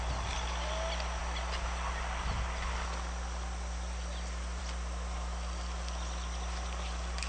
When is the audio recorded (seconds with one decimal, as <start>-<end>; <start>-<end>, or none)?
0.0-7.3